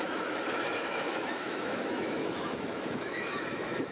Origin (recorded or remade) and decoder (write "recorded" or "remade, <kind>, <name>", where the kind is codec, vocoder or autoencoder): remade, autoencoder, DAC-VAE